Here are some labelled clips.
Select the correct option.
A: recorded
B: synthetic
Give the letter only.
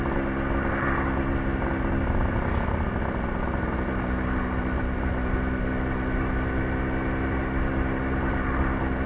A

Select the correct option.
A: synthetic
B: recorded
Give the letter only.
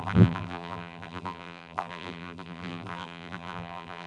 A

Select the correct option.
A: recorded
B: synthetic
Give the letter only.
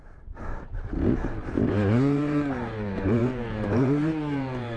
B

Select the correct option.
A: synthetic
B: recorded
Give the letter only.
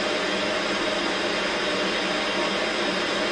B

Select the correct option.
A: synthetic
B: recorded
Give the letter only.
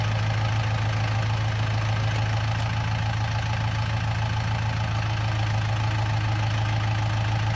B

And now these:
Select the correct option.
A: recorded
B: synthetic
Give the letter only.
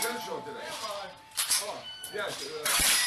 B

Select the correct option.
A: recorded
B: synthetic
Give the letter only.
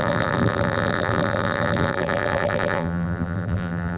B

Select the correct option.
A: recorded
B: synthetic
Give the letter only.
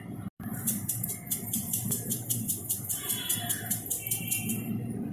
B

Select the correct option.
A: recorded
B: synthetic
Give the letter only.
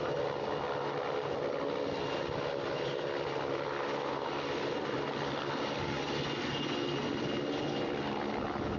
A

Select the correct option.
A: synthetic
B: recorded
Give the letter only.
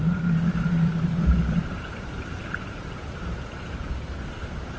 A